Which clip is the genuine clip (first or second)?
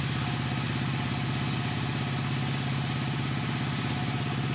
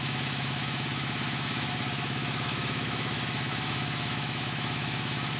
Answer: first